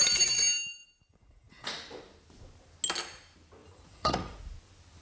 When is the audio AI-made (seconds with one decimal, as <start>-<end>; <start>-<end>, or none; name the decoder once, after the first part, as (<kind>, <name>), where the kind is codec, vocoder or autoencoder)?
1.1-1.7 (vocoder, Vocos); 3.6-4.4